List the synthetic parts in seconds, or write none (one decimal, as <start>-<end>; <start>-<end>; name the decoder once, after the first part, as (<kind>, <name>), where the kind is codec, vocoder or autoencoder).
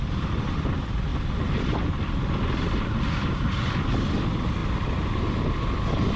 0.0-6.2 (vocoder, BigVGAN v2)